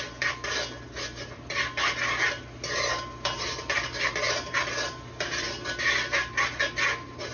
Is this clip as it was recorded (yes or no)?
yes